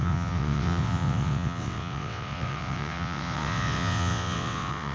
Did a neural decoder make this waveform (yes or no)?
yes